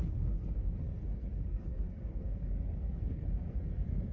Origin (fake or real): fake